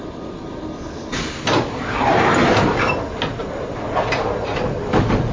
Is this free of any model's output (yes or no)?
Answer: yes